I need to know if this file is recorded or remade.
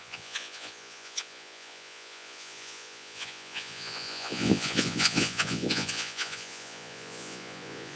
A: remade